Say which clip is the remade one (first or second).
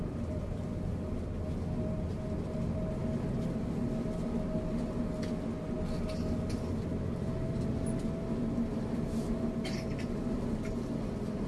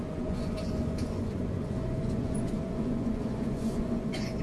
second